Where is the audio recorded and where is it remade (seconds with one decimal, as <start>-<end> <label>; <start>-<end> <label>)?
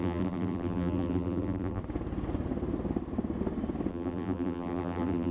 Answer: 0.0-1.8 remade; 1.8-3.9 recorded; 3.9-5.3 remade